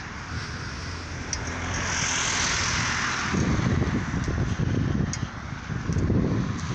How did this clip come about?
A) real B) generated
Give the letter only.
A